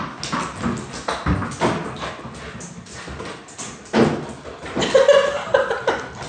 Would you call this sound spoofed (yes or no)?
no